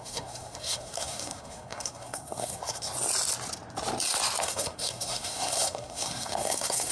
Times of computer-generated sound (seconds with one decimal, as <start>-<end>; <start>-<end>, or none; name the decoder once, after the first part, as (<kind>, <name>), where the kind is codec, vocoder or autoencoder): 0.0-2.9 (codec, SNAC); 4.4-6.9